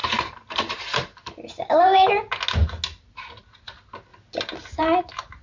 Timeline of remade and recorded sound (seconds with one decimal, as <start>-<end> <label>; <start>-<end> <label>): 0.0-1.3 remade; 1.3-5.4 recorded

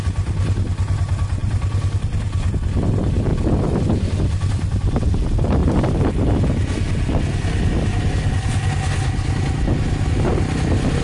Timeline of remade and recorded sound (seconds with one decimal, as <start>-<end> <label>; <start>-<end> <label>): 0.0-1.4 recorded; 1.4-2.5 remade; 2.5-3.3 recorded; 3.3-5.1 remade; 5.1-5.6 recorded; 5.6-6.1 remade; 6.1-11.0 recorded

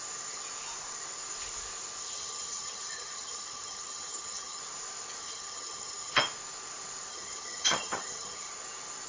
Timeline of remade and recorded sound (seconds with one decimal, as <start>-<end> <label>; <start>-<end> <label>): 0.0-2.0 recorded; 2.0-4.6 remade; 4.6-5.2 recorded; 5.2-6.2 remade; 6.2-7.1 recorded; 7.1-8.5 remade; 8.5-9.1 recorded